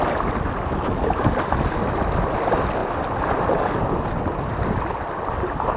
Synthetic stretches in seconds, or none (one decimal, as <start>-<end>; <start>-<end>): none